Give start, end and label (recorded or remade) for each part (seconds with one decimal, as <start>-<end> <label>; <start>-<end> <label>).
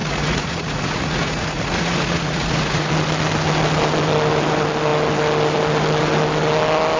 0.0-2.9 remade; 2.9-7.0 recorded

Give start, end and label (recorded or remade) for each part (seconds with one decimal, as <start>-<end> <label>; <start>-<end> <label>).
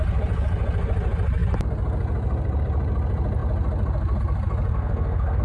0.0-4.7 recorded; 4.7-5.4 remade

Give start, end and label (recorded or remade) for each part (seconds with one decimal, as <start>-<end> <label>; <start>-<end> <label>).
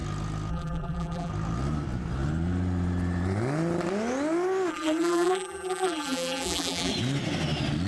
0.0-0.5 recorded; 0.5-1.3 remade; 1.3-4.7 recorded; 4.7-6.9 remade; 6.9-7.9 recorded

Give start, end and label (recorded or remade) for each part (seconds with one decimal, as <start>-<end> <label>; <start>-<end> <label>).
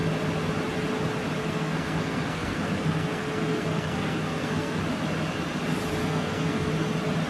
0.0-1.4 recorded; 1.4-4.8 remade; 4.8-6.0 recorded; 6.0-6.7 remade; 6.7-7.3 recorded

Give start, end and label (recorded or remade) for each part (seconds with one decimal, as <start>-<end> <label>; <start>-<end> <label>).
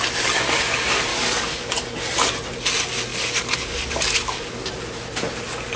0.0-1.1 recorded; 1.1-1.7 remade; 1.7-3.1 recorded; 3.1-4.7 remade; 4.7-5.8 recorded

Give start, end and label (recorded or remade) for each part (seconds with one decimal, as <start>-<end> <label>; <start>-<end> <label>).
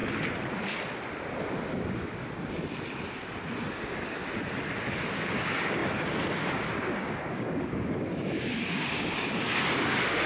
0.0-3.7 recorded; 3.7-4.2 remade; 4.2-5.0 recorded; 5.0-10.3 remade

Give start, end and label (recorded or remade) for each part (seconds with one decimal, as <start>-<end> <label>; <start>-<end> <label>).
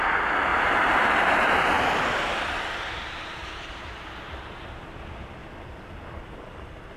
0.0-0.5 recorded; 0.5-4.7 remade; 4.7-7.0 recorded